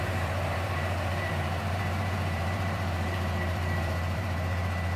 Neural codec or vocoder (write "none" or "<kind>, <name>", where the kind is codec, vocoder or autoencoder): vocoder, BigVGAN v2